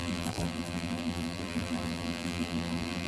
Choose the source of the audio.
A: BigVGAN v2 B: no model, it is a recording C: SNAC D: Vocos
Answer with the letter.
A